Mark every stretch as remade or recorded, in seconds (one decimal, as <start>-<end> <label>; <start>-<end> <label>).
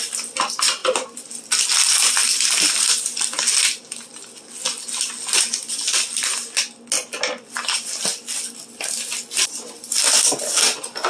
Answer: 0.0-11.1 recorded